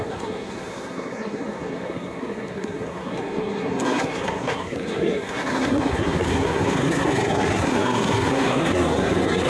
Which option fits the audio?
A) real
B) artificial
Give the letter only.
B